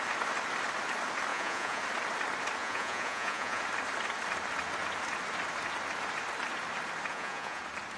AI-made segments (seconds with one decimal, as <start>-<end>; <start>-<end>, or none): 1.3-1.8; 2.6-3.6; 7.1-7.6